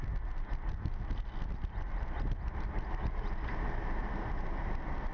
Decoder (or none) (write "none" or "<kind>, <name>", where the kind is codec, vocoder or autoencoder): none